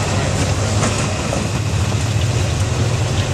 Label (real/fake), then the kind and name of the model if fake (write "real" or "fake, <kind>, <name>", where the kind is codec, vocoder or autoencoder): real